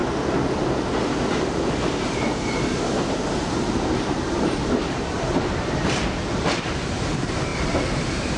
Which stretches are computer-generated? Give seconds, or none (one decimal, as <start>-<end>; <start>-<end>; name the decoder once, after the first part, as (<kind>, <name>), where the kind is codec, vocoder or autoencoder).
3.3-8.4 (vocoder, BigVGAN v2)